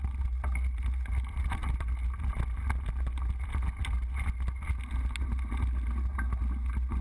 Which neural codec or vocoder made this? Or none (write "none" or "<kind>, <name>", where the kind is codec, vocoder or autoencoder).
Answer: none